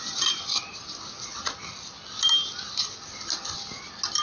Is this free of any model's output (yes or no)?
yes